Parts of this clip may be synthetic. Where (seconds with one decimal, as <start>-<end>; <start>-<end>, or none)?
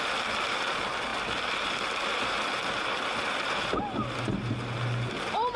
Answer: none